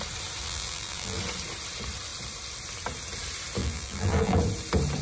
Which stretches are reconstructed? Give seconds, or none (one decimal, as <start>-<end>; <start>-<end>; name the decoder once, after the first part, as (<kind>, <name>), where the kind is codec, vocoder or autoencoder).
0.4-1.2 (vocoder, BigVGAN v2); 3.6-4.4